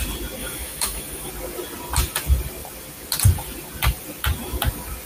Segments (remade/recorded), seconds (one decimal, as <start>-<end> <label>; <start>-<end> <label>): 0.0-0.4 recorded; 0.4-1.3 remade; 1.3-5.1 recorded